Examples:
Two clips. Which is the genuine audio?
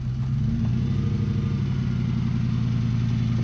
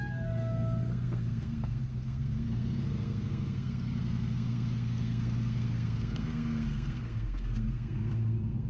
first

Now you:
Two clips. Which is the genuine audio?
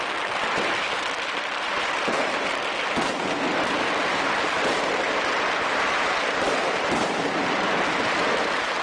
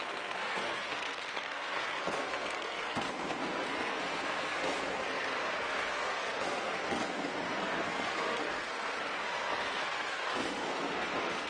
first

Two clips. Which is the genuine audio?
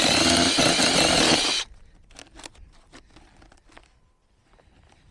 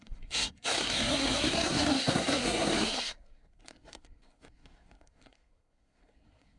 first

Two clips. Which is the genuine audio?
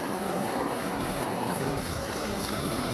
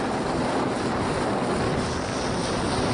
second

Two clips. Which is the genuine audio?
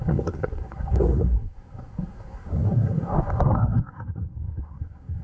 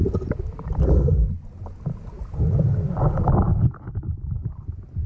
second